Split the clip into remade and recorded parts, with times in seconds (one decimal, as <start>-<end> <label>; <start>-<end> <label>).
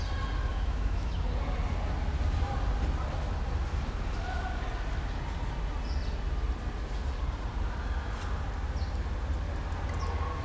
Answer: 0.0-0.5 recorded; 0.5-1.1 remade; 1.1-10.4 recorded